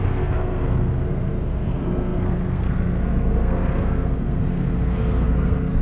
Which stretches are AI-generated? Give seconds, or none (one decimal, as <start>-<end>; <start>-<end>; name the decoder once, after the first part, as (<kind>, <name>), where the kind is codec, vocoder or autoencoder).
0.0-5.8 (codec, SNAC)